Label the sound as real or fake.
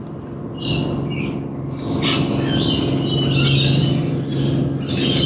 real